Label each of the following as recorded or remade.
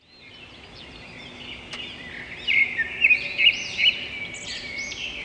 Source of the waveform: recorded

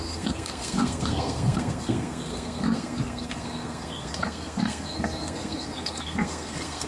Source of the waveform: remade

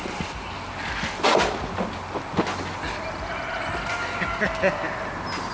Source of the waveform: recorded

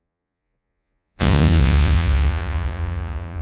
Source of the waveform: remade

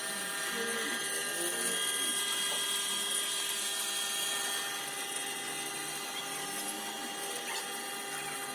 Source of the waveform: recorded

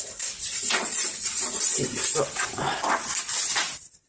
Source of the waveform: recorded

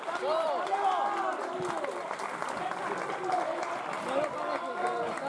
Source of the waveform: recorded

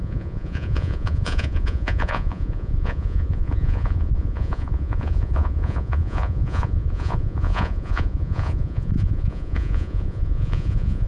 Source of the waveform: remade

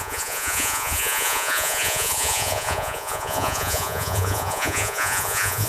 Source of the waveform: remade